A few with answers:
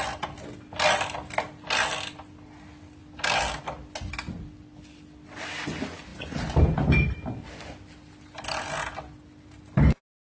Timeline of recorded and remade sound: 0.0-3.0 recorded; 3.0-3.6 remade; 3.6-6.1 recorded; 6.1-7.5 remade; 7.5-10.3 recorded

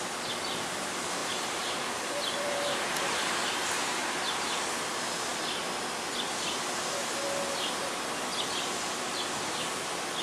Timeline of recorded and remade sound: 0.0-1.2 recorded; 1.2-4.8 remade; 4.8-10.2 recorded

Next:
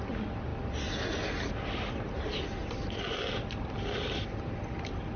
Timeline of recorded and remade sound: 0.0-5.2 recorded

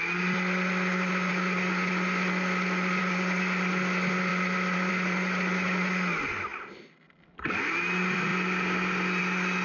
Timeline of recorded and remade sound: 0.0-4.3 recorded; 4.3-4.9 remade; 4.9-6.5 recorded; 6.5-7.5 remade; 7.5-9.6 recorded

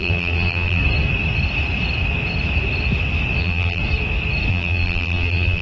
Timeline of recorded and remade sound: 0.0-0.8 remade; 0.8-3.4 recorded; 3.4-3.8 remade; 3.8-4.5 recorded; 4.5-5.6 remade

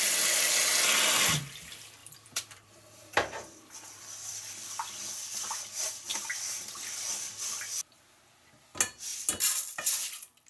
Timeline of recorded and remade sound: 0.0-2.0 recorded; 2.0-4.5 remade; 4.5-10.5 recorded

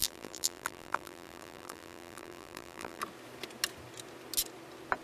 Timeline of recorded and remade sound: 0.0-3.0 remade; 3.0-5.0 recorded

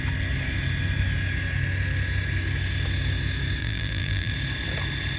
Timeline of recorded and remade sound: 0.0-3.6 recorded; 3.6-4.3 remade; 4.3-5.2 recorded